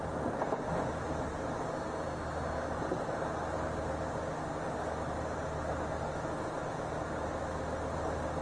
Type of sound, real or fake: real